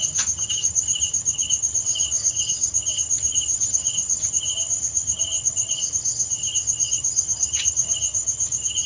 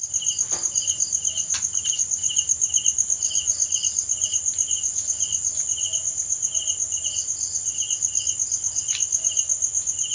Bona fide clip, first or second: second